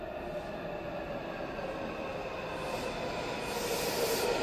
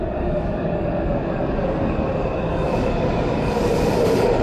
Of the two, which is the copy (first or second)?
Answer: second